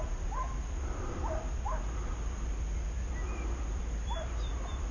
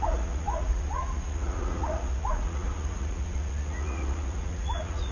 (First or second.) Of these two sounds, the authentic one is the first